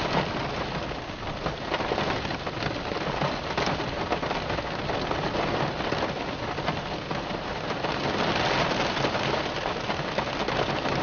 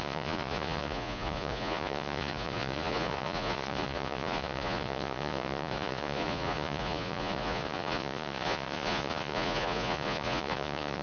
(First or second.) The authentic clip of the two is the first